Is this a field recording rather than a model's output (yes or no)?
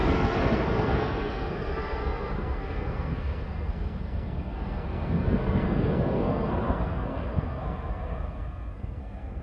no